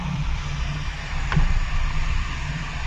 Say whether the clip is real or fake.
fake